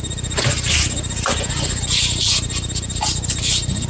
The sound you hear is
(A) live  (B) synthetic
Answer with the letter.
A